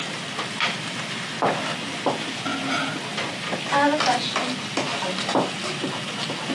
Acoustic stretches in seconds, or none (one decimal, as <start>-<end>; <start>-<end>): 0.0-6.5